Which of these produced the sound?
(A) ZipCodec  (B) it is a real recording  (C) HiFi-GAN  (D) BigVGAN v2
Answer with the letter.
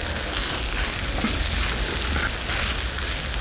B